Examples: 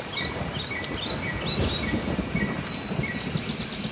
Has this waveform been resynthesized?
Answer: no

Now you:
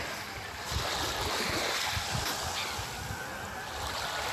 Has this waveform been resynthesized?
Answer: no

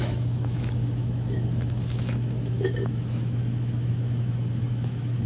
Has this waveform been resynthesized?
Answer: yes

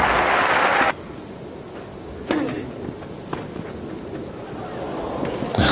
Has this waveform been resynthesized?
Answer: no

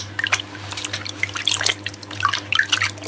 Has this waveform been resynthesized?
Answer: no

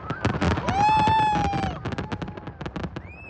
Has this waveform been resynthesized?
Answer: no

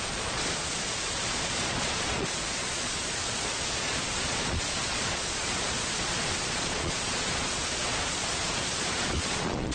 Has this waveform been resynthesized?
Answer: yes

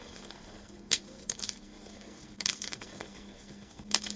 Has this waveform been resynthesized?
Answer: yes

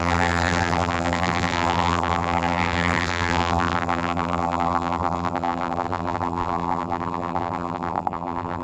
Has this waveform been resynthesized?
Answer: yes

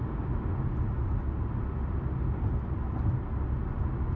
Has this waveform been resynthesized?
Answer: no